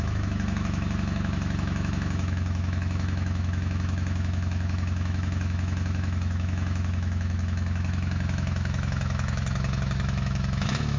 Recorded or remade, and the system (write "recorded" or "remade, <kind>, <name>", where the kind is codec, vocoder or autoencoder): remade, autoencoder, DAC-VAE